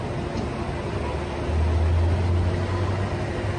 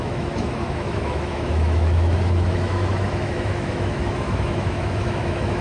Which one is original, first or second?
first